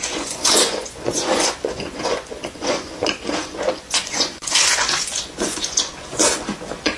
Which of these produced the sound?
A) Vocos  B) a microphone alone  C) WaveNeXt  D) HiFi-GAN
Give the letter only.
A